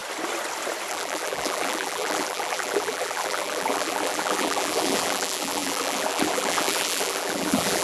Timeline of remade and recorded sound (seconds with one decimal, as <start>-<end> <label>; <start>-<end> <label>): 0.0-0.9 recorded; 0.9-7.8 remade